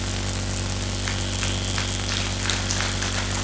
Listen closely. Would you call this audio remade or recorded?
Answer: recorded